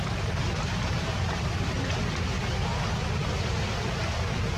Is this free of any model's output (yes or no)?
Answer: yes